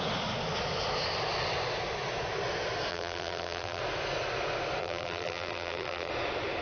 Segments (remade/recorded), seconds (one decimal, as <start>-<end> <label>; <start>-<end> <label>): 0.0-2.9 recorded; 2.9-3.8 remade; 3.8-4.8 recorded; 4.8-6.1 remade; 6.1-6.6 recorded